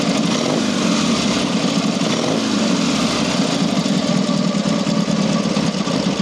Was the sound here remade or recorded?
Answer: recorded